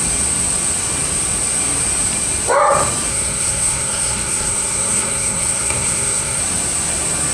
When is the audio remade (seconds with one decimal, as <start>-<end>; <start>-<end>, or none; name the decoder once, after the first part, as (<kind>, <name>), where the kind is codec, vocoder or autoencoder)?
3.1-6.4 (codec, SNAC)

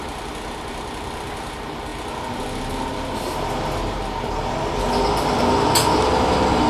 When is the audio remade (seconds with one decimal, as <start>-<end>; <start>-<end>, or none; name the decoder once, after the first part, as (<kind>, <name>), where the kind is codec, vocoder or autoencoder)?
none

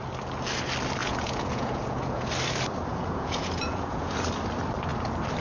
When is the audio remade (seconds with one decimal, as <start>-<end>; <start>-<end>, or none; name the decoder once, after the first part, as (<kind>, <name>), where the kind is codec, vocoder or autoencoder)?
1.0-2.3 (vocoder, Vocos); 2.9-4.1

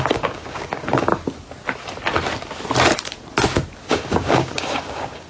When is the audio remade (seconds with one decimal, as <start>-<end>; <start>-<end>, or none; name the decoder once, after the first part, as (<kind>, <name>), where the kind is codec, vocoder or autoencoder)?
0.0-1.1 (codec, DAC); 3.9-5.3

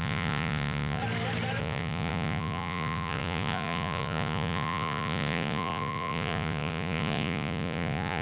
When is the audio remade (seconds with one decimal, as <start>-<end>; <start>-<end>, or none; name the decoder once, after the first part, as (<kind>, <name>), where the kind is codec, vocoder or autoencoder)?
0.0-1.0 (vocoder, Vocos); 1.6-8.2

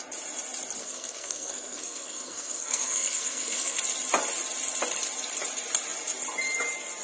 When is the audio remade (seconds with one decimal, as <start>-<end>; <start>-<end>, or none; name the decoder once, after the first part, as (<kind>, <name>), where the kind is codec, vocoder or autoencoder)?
0.8-3.8 (codec, SNAC)